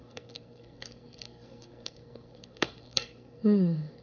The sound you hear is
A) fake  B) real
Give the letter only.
A